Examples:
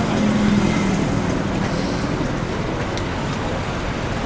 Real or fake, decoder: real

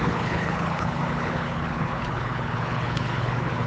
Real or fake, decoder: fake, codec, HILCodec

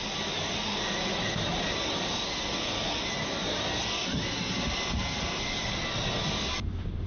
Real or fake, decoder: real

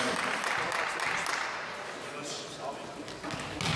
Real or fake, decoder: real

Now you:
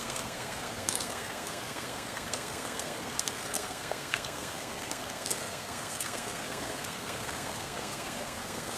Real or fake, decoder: fake, codec, SNAC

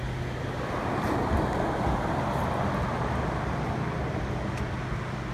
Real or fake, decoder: real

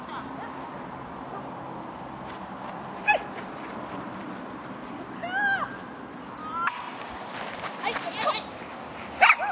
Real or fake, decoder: real